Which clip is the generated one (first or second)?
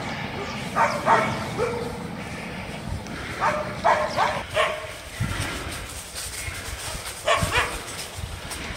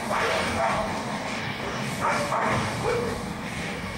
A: second